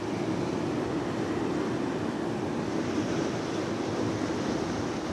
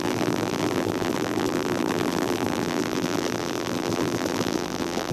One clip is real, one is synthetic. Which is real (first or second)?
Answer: first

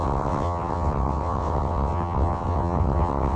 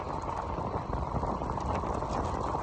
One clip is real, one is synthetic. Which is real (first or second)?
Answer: second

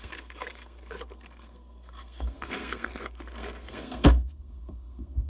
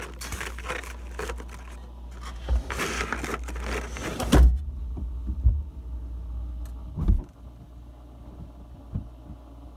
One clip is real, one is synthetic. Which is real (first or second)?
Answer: second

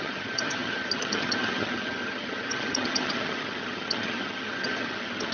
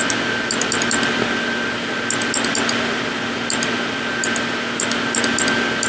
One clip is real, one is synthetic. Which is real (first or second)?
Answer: second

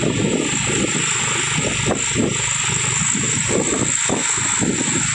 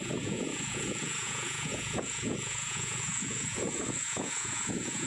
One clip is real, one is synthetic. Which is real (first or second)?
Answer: first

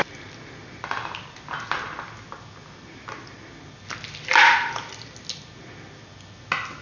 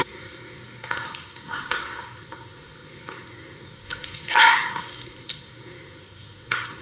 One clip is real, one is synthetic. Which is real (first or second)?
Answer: first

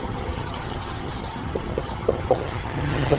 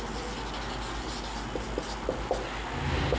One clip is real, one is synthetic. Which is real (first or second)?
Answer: second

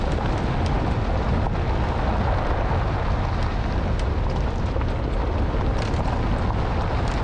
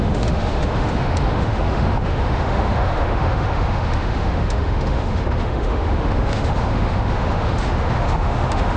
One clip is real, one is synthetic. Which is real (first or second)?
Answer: first